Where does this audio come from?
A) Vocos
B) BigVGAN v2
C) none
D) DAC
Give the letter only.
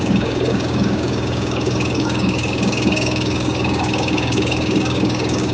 D